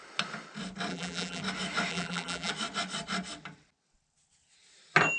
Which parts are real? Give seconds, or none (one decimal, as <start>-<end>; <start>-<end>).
0.0-0.9; 1.4-1.9; 2.5-5.2